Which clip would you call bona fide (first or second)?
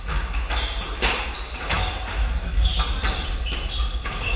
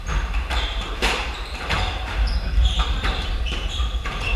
first